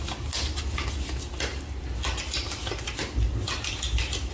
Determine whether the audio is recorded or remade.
recorded